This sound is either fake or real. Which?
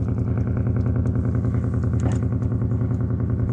real